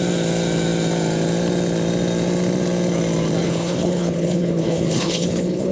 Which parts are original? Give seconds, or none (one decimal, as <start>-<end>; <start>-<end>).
0.0-3.4